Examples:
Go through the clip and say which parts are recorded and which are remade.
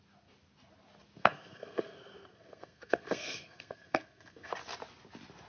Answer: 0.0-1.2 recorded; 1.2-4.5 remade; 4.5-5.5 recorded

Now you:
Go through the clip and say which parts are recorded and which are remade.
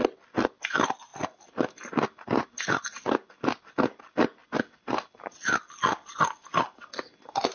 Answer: 0.0-7.5 recorded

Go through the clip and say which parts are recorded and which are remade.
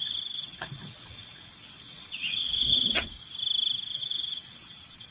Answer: 0.0-3.1 remade; 3.1-3.9 recorded; 3.9-5.1 remade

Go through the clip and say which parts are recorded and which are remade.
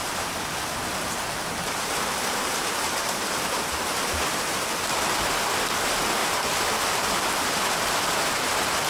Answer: 0.0-5.2 remade; 5.2-6.2 recorded; 6.2-8.4 remade; 8.4-8.9 recorded